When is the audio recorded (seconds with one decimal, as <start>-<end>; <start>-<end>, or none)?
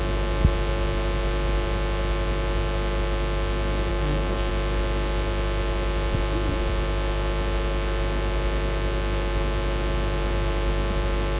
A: 0.0-3.9; 4.5-11.4